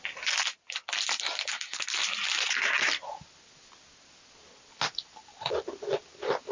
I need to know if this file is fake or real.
real